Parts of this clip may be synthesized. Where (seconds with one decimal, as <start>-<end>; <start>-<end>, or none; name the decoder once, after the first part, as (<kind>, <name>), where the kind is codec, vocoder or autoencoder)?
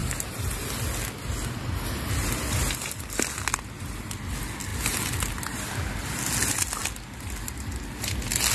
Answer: none